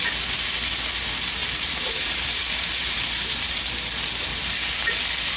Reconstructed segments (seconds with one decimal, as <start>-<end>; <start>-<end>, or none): 1.4-3.7; 4.3-4.9